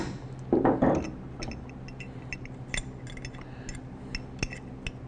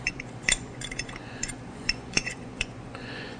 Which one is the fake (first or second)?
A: second